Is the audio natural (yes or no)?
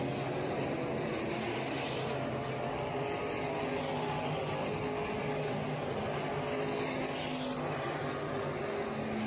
yes